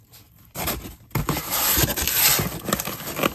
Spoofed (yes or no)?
no